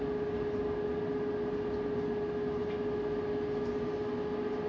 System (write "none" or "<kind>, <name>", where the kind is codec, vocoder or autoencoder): none